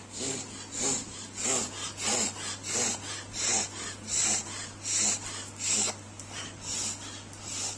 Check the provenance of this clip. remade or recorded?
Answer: recorded